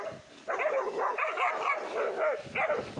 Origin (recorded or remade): recorded